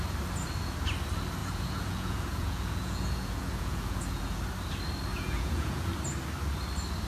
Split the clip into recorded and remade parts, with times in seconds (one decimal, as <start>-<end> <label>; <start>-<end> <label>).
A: 0.0-1.4 recorded; 1.4-4.4 remade; 4.4-5.1 recorded; 5.1-5.9 remade; 5.9-7.1 recorded